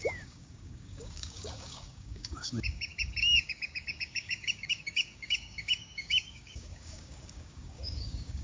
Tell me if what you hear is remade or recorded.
remade